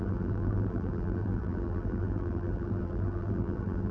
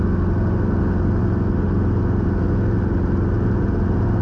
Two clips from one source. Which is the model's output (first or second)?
first